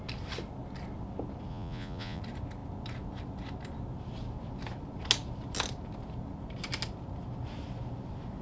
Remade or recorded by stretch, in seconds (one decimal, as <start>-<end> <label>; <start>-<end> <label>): 0.0-1.5 recorded; 1.5-2.2 remade; 2.2-8.4 recorded